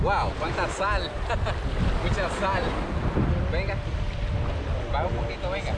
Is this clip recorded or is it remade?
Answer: recorded